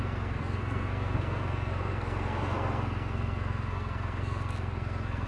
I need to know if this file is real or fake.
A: fake